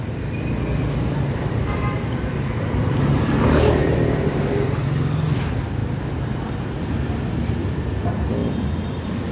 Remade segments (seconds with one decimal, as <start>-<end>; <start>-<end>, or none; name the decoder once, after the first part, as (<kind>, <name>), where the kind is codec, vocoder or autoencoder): 3.8-4.5 (vocoder, BigVGAN v2); 5.8-6.9; 8.4-9.3